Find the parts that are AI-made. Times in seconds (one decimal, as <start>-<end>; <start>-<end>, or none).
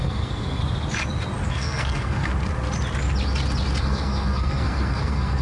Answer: 0.0-0.6; 1.5-2.3; 3.8-5.4